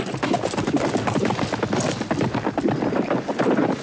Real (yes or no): no